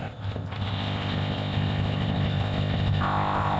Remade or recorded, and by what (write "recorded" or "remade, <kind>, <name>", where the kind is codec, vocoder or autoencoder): remade, codec, ZipCodec